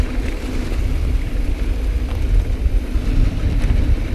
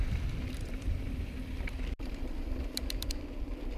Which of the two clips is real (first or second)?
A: first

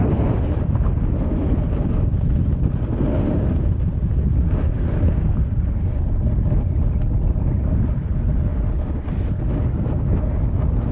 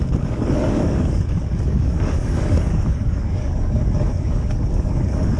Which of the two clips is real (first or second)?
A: first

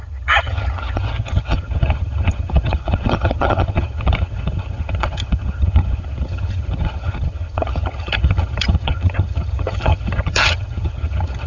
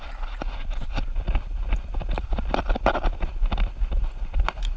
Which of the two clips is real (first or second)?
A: second